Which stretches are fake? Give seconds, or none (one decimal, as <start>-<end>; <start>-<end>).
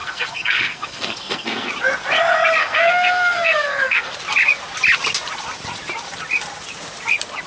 0.0-1.7; 2.6-4.1